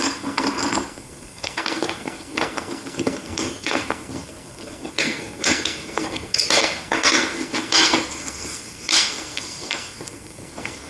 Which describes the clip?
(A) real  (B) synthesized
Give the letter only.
B